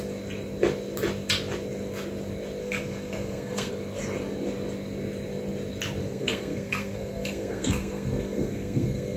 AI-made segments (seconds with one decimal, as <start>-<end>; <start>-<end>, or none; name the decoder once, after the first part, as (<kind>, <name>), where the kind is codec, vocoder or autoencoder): 2.6-3.7 (codec, SNAC); 6.0-9.2